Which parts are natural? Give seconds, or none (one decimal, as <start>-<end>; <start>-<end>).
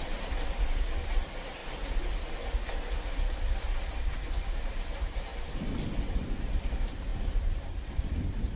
1.6-3.2; 5.3-6.0